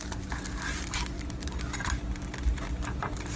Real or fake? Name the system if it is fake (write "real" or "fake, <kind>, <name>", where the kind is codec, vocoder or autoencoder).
real